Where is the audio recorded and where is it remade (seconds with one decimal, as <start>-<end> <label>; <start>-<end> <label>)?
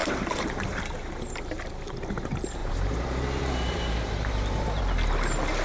0.0-1.2 remade; 1.2-2.6 recorded; 2.6-4.8 remade; 4.8-5.6 recorded